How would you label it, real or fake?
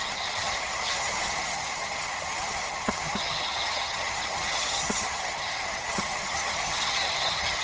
fake